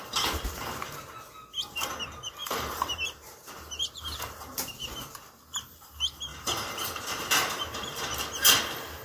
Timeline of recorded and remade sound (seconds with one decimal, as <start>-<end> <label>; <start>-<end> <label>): 0.0-2.4 recorded; 2.4-4.7 remade; 4.7-6.3 recorded; 6.3-8.2 remade; 8.2-9.0 recorded